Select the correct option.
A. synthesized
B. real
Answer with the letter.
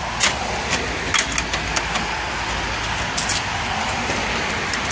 B